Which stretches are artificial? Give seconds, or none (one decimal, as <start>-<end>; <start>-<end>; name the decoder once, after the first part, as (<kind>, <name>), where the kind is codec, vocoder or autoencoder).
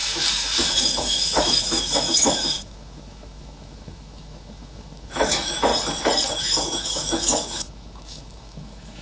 0.0-5.7 (autoencoder, DAC-VAE); 6.4-9.0